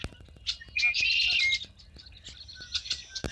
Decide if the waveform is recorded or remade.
recorded